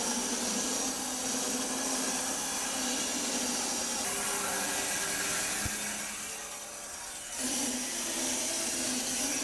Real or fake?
real